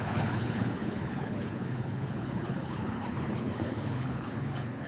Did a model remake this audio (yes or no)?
yes